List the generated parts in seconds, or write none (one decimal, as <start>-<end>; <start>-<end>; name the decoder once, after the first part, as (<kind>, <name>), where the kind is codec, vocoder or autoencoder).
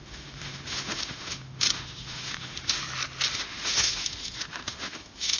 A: 0.0-2.8 (autoencoder, DAC-VAE); 3.3-5.4